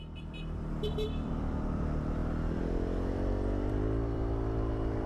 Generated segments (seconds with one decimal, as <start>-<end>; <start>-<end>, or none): 0.0-5.1